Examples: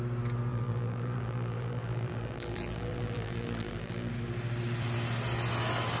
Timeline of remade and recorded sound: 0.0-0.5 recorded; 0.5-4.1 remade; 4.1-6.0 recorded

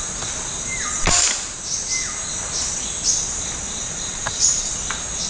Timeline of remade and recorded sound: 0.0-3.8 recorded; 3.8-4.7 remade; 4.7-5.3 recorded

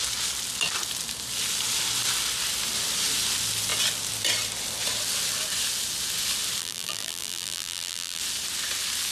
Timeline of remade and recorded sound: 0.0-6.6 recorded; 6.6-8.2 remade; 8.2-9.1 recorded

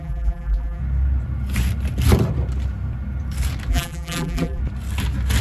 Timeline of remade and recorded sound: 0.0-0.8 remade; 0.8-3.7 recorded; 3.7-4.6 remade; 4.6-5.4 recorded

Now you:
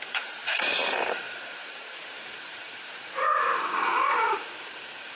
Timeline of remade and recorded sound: 0.0-5.2 remade

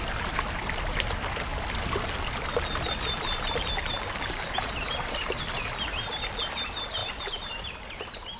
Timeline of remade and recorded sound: 0.0-3.8 recorded; 3.8-5.4 remade; 5.4-7.0 recorded; 7.0-8.4 remade

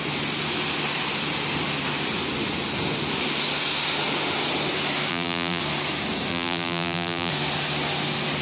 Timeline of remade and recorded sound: 0.0-5.1 recorded; 5.1-5.6 remade; 5.6-6.3 recorded; 6.3-7.3 remade; 7.3-8.4 recorded